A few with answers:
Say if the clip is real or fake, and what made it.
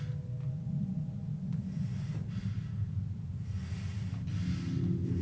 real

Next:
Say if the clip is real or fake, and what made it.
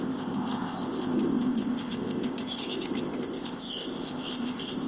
fake, codec, ZipCodec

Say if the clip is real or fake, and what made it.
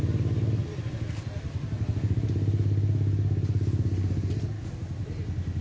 real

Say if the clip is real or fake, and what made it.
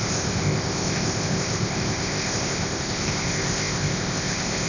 fake, codec, ZipCodec